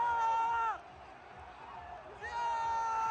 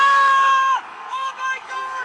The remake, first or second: second